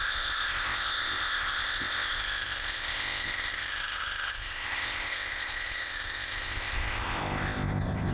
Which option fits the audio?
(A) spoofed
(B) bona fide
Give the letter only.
A